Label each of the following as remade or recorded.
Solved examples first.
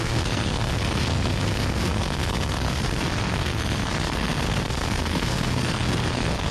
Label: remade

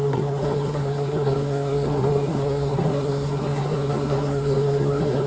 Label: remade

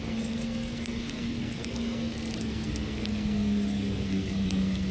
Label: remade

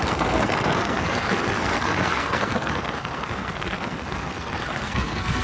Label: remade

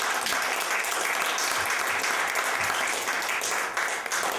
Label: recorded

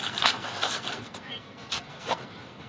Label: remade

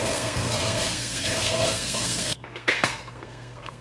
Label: remade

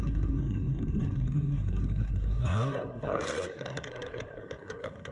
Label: remade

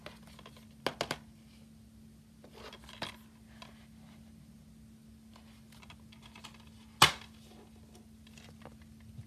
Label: recorded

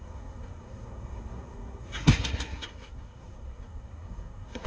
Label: remade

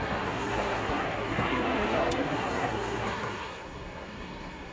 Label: remade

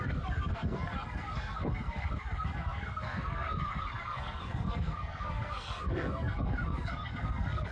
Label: remade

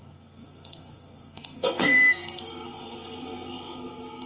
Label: remade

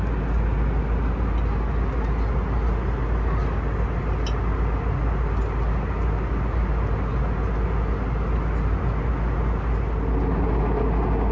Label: recorded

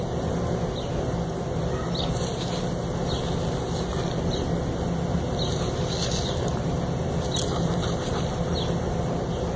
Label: recorded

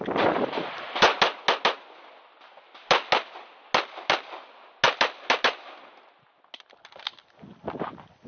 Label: recorded